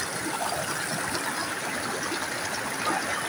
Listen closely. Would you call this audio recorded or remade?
recorded